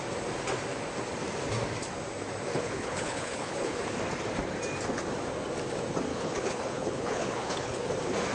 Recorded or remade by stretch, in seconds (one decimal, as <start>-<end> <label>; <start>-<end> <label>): 0.0-2.5 recorded; 2.5-3.8 remade; 3.8-6.1 recorded; 6.1-7.9 remade; 7.9-8.3 recorded